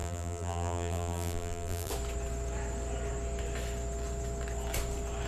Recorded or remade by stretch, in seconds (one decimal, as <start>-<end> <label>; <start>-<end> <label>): 0.0-1.9 remade; 1.9-5.3 recorded